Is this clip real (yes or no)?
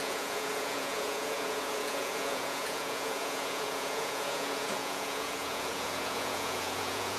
no